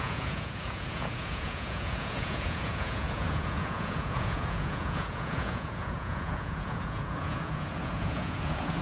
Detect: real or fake fake